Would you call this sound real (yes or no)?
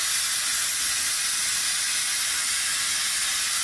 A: yes